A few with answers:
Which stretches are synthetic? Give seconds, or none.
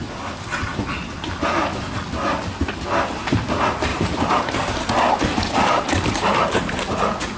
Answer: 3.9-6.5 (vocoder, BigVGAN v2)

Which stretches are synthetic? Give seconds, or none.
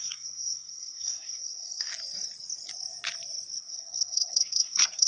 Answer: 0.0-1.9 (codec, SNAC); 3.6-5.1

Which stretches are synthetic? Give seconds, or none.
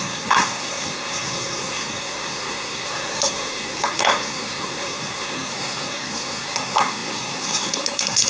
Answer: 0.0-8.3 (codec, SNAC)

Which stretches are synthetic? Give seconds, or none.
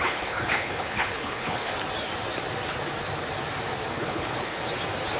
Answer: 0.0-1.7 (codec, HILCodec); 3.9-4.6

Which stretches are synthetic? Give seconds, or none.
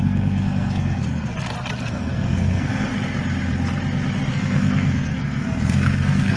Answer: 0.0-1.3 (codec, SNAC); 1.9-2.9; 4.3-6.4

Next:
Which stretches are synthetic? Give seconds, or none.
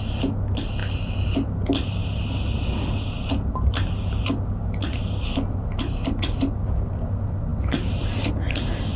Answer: none